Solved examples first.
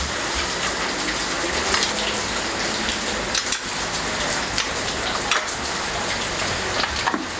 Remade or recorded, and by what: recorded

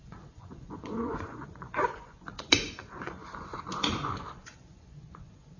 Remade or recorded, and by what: remade, vocoder, Vocos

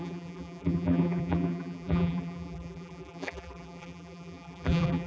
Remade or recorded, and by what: remade, vocoder, BigVGAN v2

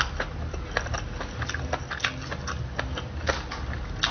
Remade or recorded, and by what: recorded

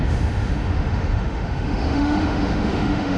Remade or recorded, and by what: remade, autoencoder, DAC-VAE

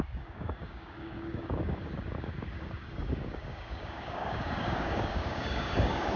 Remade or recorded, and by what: remade, codec, DAC